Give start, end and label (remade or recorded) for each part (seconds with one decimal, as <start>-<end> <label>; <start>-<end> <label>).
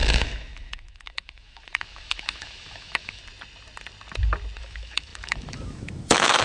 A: 0.0-3.2 remade; 3.2-4.6 recorded; 4.6-6.4 remade